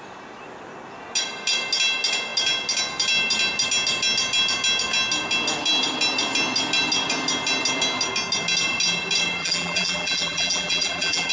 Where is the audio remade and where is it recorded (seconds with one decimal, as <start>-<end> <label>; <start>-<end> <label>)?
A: 0.0-9.4 recorded; 9.4-11.3 remade